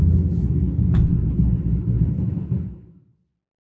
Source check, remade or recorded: recorded